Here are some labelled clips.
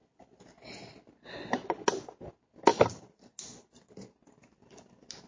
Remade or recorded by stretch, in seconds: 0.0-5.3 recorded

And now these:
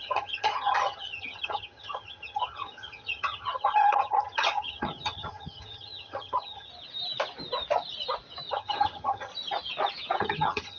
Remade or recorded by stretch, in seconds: 0.0-6.7 remade; 6.7-8.5 recorded; 8.5-9.3 remade; 9.3-10.2 recorded; 10.2-10.8 remade